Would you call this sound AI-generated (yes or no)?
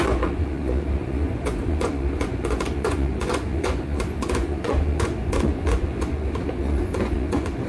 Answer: yes